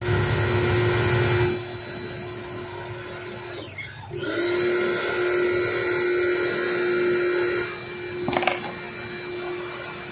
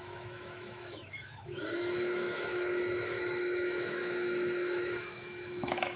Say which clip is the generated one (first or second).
second